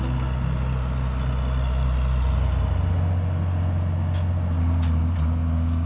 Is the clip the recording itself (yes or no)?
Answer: yes